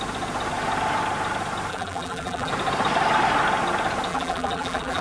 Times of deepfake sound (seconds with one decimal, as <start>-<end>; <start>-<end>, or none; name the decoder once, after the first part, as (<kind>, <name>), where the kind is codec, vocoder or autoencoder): 1.7-2.5 (vocoder, BigVGAN v2); 4.1-5.0